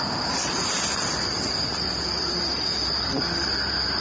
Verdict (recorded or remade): recorded